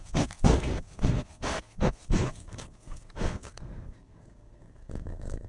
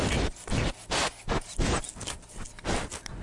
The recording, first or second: second